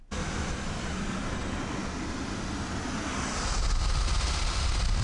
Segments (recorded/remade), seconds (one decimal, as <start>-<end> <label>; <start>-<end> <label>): 0.0-5.0 recorded